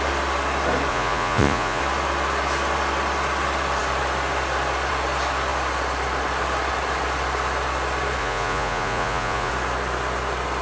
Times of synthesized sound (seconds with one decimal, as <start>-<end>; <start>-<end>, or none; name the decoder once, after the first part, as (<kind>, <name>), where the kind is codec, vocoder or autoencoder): 0.9-1.8 (vocoder, Vocos); 8.2-9.5